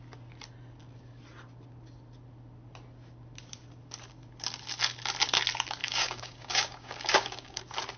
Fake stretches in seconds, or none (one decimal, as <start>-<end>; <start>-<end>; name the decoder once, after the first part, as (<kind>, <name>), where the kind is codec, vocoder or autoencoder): 5.8-7.6 (codec, DAC)

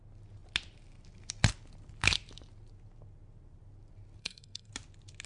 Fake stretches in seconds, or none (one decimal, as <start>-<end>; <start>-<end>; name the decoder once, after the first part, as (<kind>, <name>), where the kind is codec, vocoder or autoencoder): 4.2-4.7 (codec, SNAC)